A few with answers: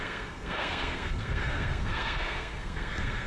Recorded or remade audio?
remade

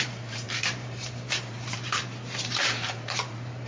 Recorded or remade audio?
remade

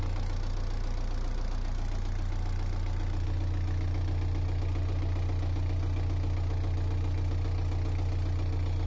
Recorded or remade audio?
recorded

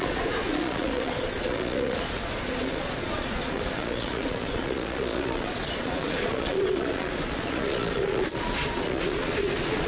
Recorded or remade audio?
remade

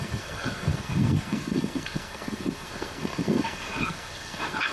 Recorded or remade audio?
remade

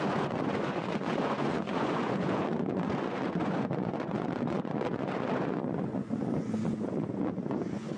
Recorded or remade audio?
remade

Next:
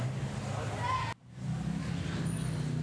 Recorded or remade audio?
recorded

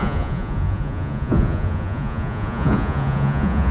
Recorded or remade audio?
remade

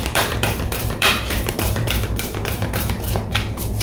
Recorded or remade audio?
remade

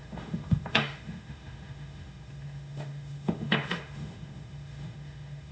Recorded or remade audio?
remade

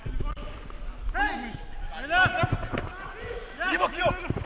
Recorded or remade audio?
recorded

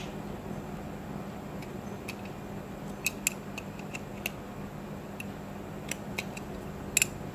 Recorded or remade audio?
recorded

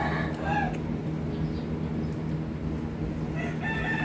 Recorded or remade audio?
recorded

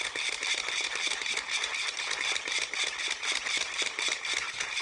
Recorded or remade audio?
remade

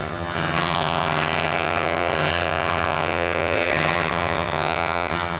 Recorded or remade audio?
remade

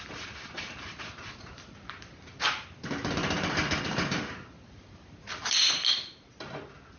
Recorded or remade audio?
recorded